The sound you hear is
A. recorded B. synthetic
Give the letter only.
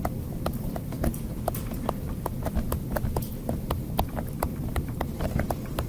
A